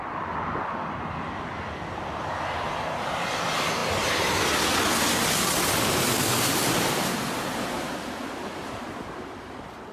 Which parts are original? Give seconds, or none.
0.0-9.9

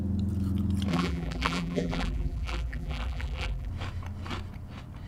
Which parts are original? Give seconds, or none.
0.0-0.9; 3.7-5.1

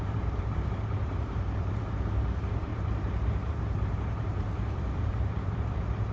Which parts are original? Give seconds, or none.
2.7-3.5